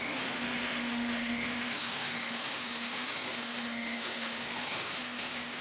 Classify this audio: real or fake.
fake